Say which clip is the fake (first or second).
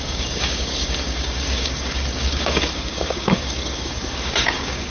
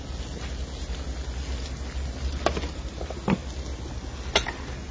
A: first